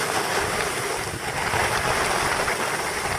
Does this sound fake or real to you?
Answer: real